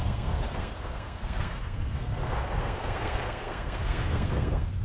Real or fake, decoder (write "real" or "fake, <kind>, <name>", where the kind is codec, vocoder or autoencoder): fake, codec, SNAC